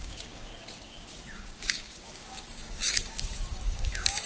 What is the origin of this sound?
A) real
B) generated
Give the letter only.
B